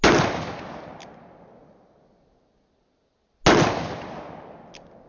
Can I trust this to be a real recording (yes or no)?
yes